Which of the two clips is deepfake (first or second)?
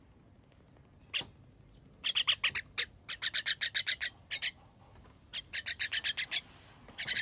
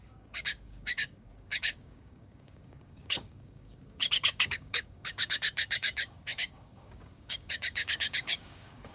second